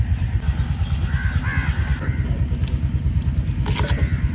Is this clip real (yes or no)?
yes